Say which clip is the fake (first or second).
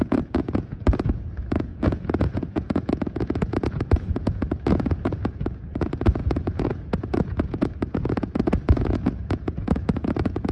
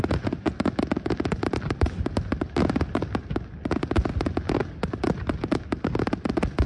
first